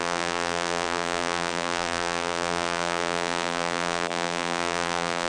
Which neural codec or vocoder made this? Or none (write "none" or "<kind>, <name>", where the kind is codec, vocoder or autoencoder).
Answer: vocoder, BigVGAN v2